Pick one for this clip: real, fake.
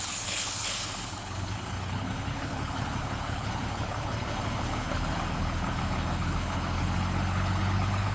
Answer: fake